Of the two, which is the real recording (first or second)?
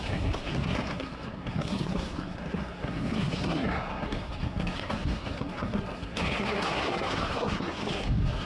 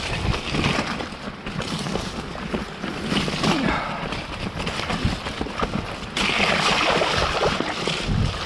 second